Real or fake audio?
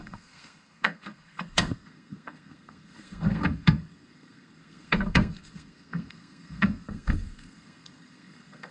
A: fake